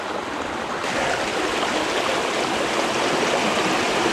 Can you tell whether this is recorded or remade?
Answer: recorded